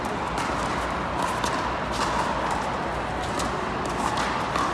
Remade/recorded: recorded